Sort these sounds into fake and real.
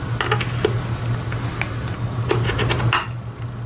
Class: real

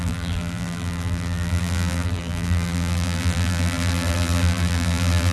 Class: fake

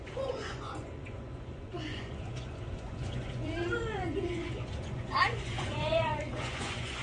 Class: fake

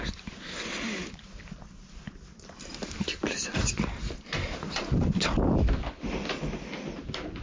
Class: real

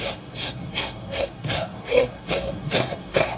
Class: fake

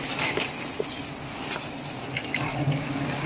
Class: real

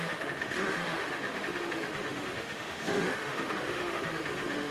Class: fake